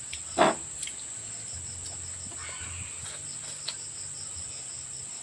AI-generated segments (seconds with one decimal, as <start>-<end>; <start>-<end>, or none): none

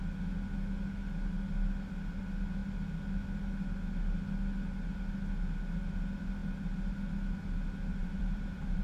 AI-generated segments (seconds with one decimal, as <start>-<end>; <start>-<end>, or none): 8.0-8.8

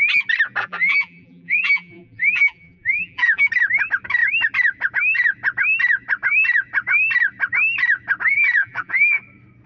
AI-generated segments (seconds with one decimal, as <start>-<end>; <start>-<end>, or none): 0.6-3.4; 8.6-9.2